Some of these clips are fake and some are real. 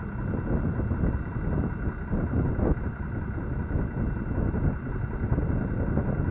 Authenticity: real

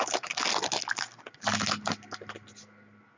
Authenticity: real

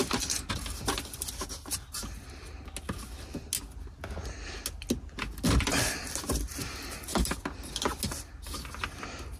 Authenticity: real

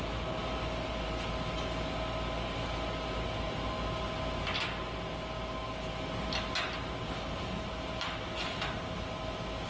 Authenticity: real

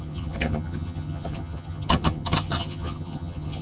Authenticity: fake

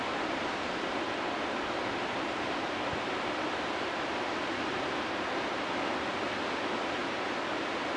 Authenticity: real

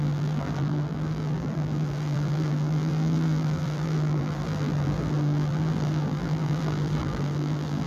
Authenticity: fake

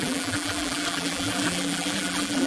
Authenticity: fake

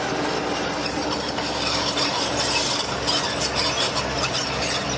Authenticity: real